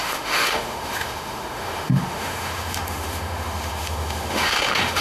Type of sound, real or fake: fake